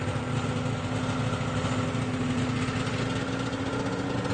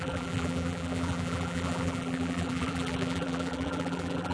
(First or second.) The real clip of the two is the first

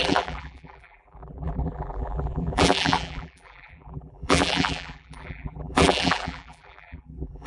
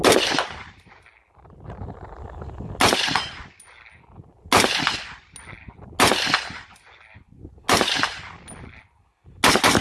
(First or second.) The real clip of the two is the second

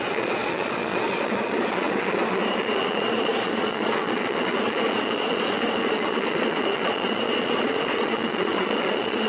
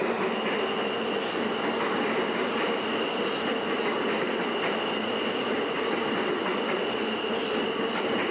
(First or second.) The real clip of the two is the second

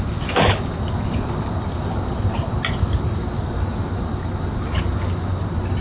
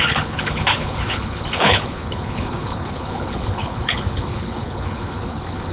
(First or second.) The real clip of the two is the first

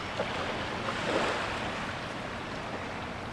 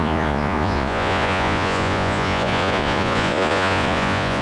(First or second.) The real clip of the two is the first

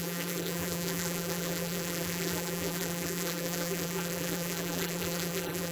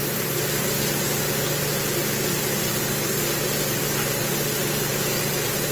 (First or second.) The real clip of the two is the second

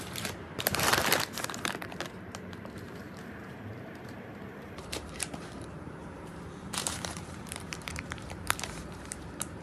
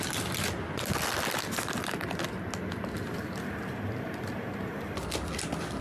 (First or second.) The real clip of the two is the second